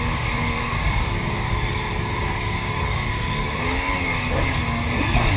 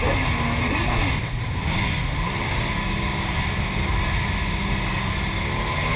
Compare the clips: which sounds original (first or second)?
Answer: second